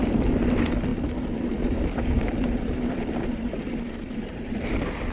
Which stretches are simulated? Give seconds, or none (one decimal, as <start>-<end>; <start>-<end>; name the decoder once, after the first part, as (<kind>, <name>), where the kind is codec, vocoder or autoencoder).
0.0-5.1 (vocoder, BigVGAN v2)